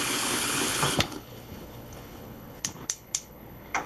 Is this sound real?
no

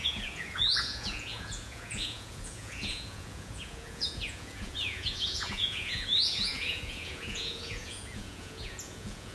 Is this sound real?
no